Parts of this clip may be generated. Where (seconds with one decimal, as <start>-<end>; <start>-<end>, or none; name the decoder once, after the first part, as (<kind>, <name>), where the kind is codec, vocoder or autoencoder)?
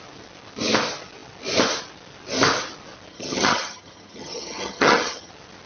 3.1-5.3 (vocoder, HiFi-GAN)